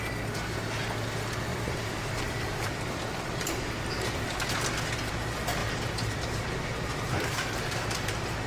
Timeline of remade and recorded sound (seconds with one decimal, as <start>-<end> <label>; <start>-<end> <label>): 0.0-1.5 recorded; 1.5-4.6 remade; 4.6-5.6 recorded; 5.6-8.5 remade